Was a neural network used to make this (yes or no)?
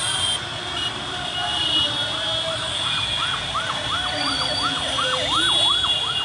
no